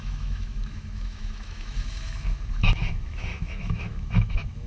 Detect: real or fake fake